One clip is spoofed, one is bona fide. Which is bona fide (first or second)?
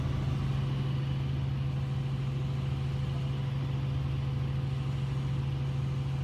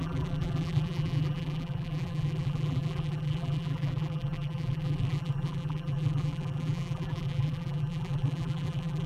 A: first